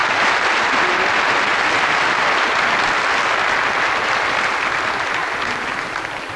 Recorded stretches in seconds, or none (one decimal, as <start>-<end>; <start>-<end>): 0.0-6.4